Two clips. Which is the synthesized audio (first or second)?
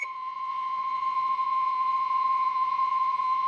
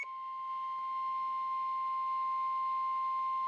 first